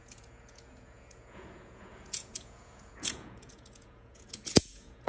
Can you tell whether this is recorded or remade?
remade